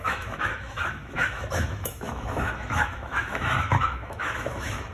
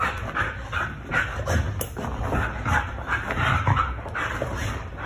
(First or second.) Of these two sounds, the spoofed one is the first